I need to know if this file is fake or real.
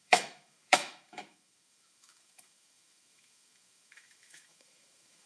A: fake